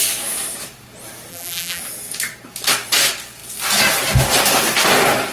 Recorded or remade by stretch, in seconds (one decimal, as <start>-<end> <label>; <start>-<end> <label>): 0.0-1.3 recorded; 1.3-1.8 remade; 1.8-5.3 recorded